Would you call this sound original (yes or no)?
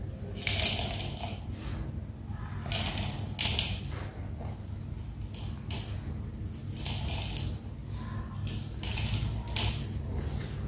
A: yes